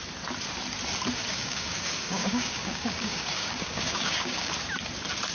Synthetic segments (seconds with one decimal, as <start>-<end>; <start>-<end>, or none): 1.3-4.5